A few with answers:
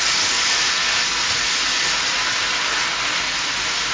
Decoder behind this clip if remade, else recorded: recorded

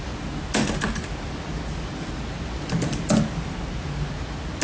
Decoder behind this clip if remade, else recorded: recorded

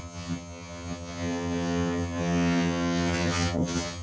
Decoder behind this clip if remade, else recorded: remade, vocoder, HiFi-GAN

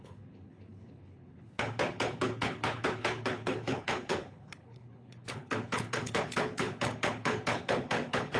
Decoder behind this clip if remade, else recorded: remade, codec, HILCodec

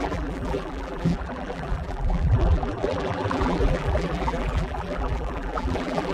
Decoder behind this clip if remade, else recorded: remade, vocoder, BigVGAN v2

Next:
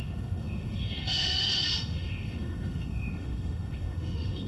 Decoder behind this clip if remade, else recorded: remade, autoencoder, DAC-VAE